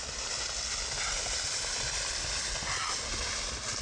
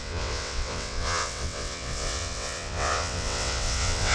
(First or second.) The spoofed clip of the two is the second